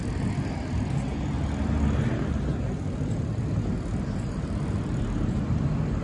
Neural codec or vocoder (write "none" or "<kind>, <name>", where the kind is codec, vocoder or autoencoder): none